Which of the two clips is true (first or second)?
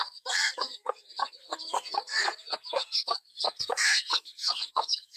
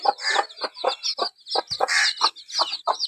second